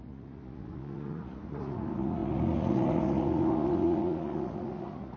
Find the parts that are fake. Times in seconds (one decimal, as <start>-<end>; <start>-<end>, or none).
0.0-5.2